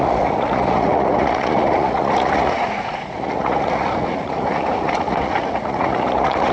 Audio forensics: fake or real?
fake